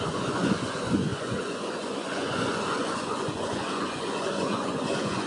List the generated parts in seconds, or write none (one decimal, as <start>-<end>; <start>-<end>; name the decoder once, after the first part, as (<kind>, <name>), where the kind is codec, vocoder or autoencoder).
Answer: 0.0-5.3 (vocoder, Vocos)